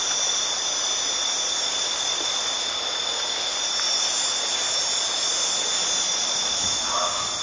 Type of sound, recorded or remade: recorded